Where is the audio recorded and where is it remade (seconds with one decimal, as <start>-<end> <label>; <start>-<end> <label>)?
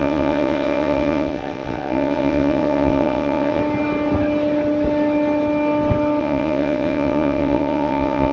0.0-3.6 remade; 3.6-6.2 recorded; 6.2-8.3 remade